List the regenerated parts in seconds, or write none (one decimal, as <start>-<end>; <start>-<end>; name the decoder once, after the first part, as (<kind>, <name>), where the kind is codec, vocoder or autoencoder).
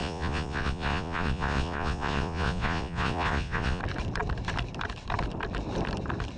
0.0-3.8 (vocoder, Vocos)